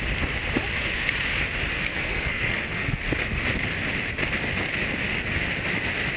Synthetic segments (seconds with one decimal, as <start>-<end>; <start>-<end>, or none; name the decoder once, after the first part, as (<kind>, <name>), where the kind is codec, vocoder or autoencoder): 1.8-3.0 (codec, SNAC)